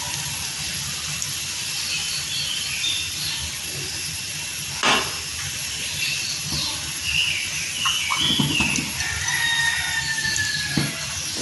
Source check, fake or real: real